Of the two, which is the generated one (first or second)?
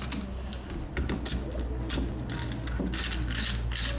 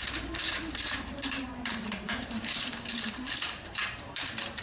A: second